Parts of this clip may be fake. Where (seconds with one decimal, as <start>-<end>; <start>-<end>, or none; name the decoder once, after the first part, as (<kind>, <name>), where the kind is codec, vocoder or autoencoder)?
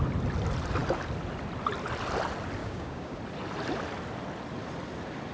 2.6-3.2 (codec, DAC)